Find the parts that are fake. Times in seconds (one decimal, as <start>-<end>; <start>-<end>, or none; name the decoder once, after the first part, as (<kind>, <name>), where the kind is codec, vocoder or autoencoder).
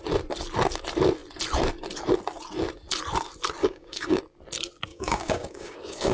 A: 3.6-4.2 (codec, DAC); 4.9-6.1